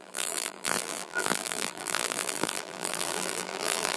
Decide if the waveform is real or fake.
fake